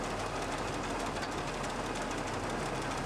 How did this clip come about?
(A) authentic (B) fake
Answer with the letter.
A